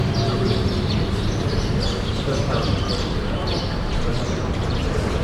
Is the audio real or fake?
fake